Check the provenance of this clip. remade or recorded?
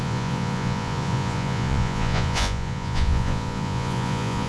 remade